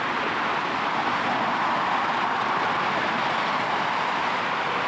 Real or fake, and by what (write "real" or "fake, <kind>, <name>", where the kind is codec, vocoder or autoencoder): real